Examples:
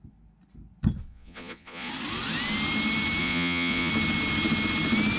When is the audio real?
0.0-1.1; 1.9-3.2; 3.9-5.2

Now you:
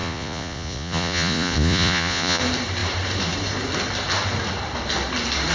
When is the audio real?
2.4-5.5

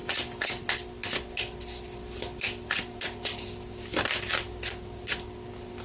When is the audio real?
0.7-5.8

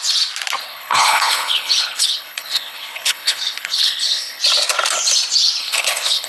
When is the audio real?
0.0-0.6; 4.4-5.6

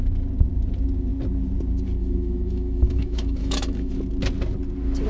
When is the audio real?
0.0-2.0; 3.9-5.1

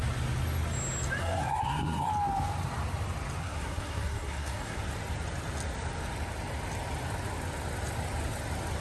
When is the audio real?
0.0-1.2; 2.1-3.4; 4.8-8.8